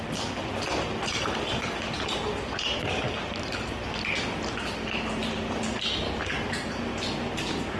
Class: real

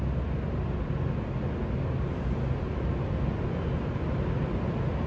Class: real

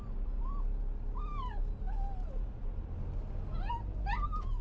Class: real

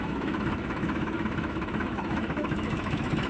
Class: fake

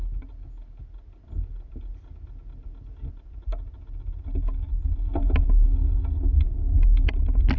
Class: real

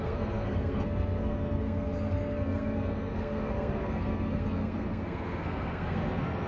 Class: fake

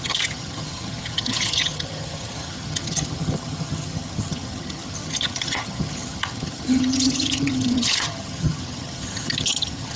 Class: fake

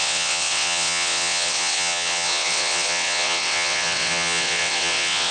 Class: fake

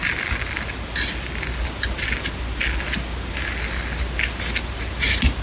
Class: real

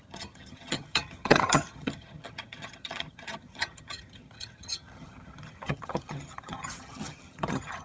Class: fake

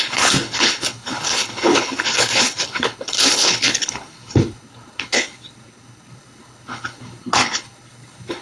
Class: fake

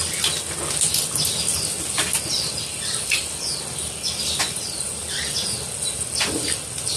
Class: real